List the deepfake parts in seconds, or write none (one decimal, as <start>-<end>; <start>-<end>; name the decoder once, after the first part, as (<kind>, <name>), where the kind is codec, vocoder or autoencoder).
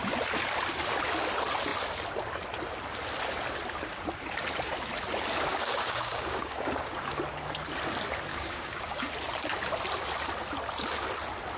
5.5-7.1 (codec, DAC); 8.3-9.1